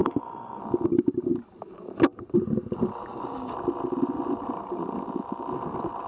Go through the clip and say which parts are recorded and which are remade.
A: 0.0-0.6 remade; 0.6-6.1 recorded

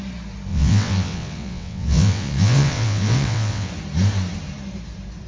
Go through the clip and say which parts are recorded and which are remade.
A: 0.0-0.5 recorded; 0.5-3.7 remade; 3.7-5.3 recorded

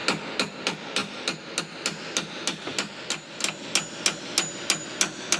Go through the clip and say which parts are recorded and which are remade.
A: 0.0-5.4 recorded